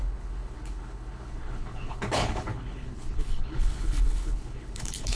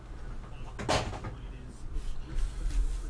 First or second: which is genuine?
second